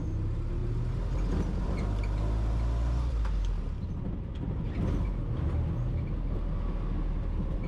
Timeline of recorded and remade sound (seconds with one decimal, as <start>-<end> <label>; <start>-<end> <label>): 0.0-7.7 recorded